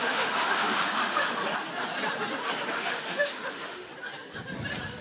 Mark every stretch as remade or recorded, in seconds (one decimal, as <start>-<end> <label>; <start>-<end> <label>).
0.0-1.4 remade; 1.4-2.7 recorded; 2.7-3.9 remade; 3.9-5.0 recorded